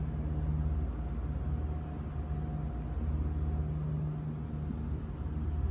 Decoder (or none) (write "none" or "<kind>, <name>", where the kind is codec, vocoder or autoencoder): none